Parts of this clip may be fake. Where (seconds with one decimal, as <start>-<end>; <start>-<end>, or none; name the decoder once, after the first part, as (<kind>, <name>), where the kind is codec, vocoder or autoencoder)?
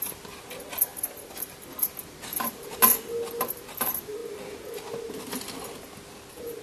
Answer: 0.9-1.7 (vocoder, BigVGAN v2); 2.3-3.5